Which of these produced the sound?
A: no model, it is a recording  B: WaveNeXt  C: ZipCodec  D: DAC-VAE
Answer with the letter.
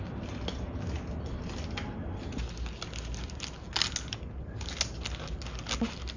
A